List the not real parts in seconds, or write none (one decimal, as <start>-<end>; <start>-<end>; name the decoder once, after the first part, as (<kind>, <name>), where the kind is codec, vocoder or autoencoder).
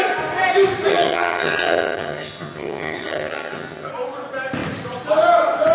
0.9-3.9 (vocoder, HiFi-GAN)